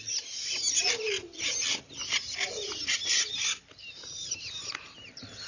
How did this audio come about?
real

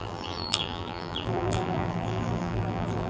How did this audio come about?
fake